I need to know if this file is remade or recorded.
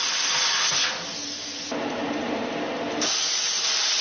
recorded